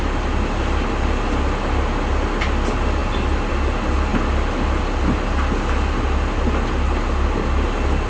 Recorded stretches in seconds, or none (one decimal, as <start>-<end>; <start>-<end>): 0.0-8.1